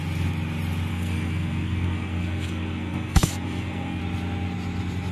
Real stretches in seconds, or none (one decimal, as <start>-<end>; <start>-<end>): 0.0-0.9; 4.0-5.1